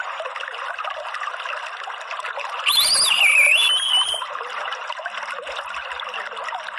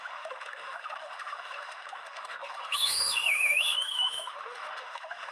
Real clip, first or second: first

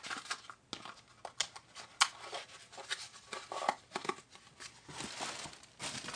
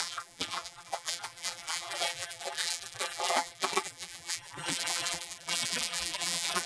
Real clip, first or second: first